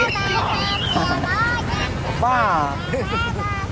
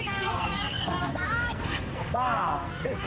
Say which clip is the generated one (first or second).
second